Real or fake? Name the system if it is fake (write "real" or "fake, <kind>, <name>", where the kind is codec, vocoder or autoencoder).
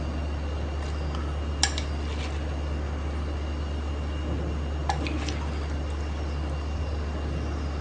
real